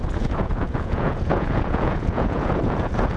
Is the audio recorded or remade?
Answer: remade